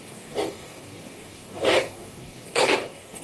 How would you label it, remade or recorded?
remade